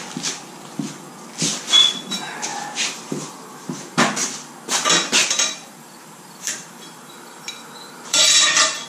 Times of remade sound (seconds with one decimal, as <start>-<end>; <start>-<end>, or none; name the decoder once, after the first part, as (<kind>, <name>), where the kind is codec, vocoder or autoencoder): 2.5-3.8 (vocoder, BigVGAN v2); 5.2-8.9